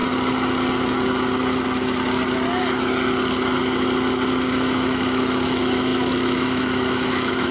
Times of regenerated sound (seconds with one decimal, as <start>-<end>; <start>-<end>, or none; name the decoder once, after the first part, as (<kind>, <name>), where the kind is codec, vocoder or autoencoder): 4.5-7.5 (autoencoder, DAC-VAE)